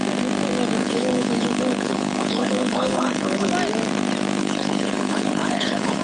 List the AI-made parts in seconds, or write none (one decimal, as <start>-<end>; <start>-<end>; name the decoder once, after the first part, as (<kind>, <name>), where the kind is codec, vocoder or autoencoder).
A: 0.8-3.5 (codec, HILCodec); 4.4-6.0